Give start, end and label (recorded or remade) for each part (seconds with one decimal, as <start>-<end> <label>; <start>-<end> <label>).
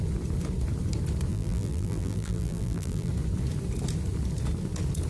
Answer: 0.0-1.3 recorded; 1.3-3.1 remade; 3.1-5.1 recorded